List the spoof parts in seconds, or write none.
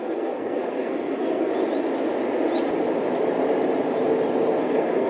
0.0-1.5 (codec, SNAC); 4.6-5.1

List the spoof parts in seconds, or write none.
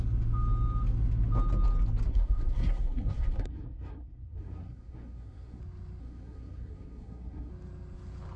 2.1-5.6 (codec, SNAC); 6.0-7.5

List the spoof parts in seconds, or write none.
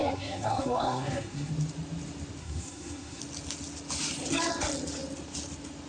0.0-1.5 (codec, SNAC); 2.4-3.2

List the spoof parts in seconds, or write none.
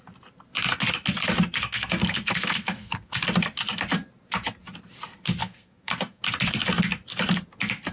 1.6-3.2 (codec, SNAC); 5.4-6.2